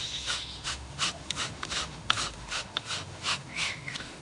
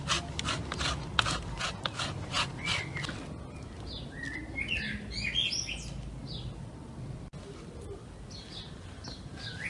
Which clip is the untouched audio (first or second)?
second